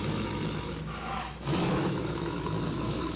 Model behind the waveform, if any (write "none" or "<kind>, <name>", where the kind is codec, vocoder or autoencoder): autoencoder, DAC-VAE